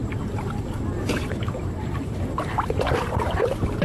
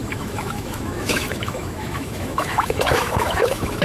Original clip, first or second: first